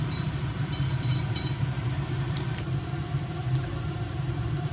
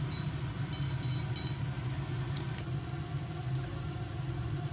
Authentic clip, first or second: second